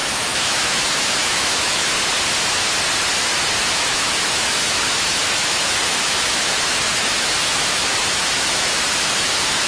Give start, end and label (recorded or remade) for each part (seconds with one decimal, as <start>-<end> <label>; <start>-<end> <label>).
0.0-1.8 remade; 1.8-3.6 recorded; 3.6-9.7 remade